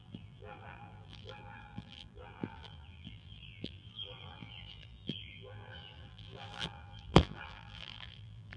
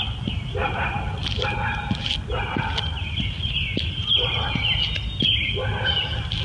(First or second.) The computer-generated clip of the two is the first